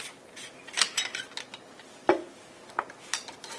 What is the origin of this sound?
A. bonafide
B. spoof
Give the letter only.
A